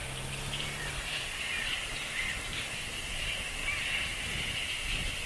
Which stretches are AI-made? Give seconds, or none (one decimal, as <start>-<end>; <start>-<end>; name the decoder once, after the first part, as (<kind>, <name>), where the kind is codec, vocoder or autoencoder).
none